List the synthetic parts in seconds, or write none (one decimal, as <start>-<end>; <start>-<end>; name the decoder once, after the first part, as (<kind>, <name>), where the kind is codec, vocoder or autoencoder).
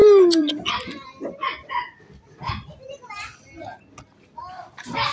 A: 0.0-0.5 (vocoder, BigVGAN v2)